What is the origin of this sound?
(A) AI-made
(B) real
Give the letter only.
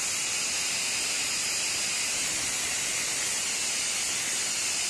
B